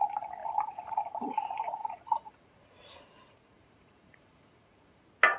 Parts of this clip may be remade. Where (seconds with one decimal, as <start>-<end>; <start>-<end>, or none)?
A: 0.4-1.0; 1.8-5.0